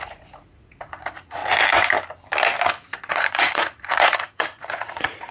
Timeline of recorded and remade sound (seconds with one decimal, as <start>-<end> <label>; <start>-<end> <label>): 0.0-1.4 remade; 1.4-3.1 recorded; 3.1-5.3 remade